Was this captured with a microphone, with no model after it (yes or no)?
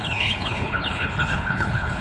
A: no